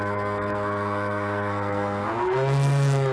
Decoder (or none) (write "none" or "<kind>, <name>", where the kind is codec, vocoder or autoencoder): codec, SNAC